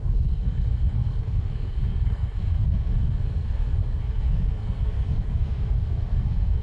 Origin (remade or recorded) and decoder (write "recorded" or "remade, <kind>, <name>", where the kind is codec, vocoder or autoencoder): remade, codec, SNAC